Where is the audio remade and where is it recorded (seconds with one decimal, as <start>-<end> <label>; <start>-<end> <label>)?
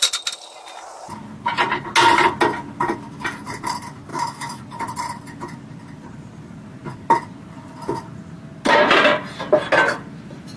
0.0-4.1 recorded; 4.1-4.6 remade; 4.6-10.6 recorded